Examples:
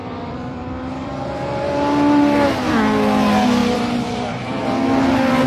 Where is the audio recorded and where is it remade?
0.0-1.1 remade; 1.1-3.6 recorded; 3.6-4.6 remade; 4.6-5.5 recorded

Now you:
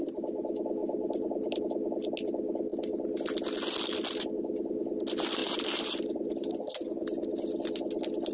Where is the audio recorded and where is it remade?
0.0-0.8 recorded; 0.8-1.6 remade; 1.6-5.4 recorded; 5.4-6.5 remade; 6.5-8.3 recorded

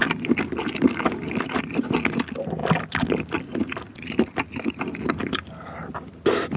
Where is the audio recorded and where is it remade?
0.0-0.7 remade; 0.7-2.6 recorded; 2.6-5.9 remade; 5.9-6.6 recorded